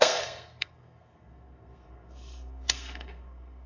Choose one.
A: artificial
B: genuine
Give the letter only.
A